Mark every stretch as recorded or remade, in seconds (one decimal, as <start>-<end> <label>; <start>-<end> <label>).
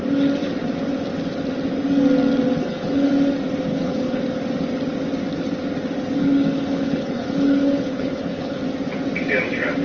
0.0-2.6 recorded; 2.6-3.1 remade; 3.1-3.7 recorded; 3.7-4.2 remade; 4.2-6.2 recorded; 6.2-8.6 remade; 8.6-9.8 recorded